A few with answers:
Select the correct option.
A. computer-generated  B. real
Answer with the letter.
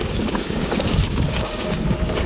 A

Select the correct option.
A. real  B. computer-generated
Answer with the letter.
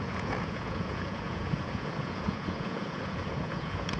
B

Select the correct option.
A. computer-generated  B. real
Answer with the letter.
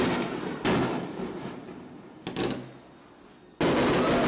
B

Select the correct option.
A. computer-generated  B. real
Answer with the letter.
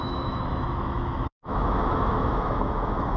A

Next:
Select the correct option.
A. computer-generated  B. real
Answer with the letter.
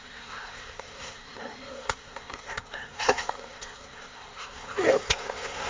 A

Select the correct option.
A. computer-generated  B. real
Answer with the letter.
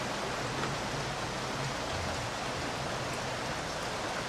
B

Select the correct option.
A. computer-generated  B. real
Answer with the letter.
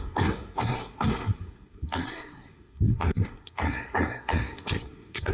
A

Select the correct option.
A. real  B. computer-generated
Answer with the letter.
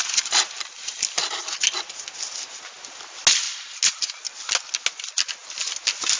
A